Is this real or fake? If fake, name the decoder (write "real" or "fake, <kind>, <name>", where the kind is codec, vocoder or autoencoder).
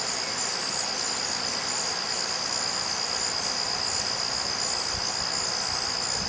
real